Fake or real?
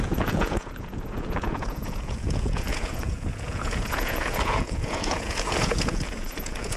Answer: fake